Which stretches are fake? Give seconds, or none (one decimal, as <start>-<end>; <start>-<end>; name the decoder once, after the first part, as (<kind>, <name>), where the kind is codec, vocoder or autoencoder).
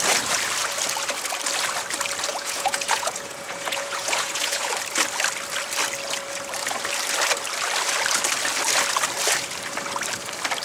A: 2.3-4.7 (vocoder, Vocos)